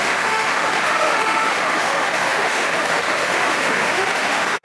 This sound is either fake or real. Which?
fake